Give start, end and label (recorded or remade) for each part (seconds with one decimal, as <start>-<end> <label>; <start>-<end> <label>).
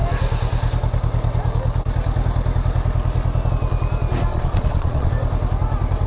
0.0-4.3 recorded; 4.3-5.1 remade; 5.1-6.1 recorded